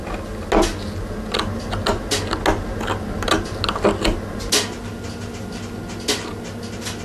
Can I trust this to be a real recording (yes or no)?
yes